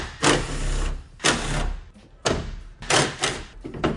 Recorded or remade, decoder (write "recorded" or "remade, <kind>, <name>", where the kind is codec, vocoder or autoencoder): recorded